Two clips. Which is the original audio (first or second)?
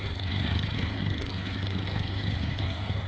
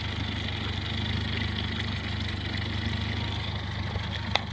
second